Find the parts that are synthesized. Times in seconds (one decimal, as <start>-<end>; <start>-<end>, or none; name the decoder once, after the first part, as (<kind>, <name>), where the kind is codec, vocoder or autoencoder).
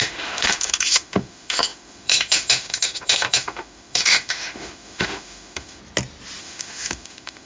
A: 0.0-5.8 (autoencoder, DAC-VAE); 6.4-7.5